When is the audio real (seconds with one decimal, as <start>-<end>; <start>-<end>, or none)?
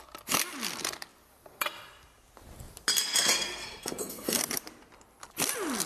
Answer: 0.0-2.9; 4.4-5.9